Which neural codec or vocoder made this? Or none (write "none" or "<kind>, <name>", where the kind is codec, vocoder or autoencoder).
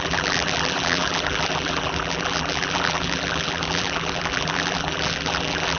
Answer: vocoder, BigVGAN v2